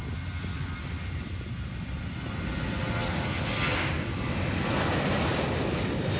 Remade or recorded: recorded